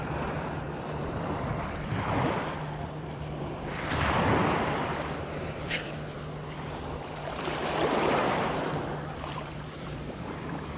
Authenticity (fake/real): fake